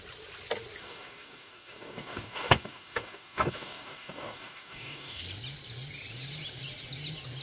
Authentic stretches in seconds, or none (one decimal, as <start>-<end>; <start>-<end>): 0.0-0.8; 5.2-7.4